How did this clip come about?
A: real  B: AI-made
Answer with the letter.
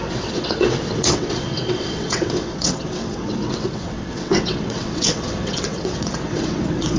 B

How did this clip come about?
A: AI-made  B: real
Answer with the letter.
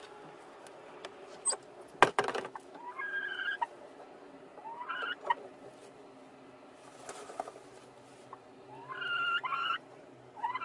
B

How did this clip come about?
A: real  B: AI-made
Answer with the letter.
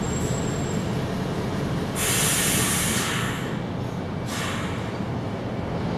A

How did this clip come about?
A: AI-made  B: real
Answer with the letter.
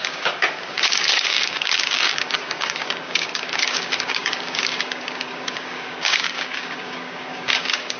A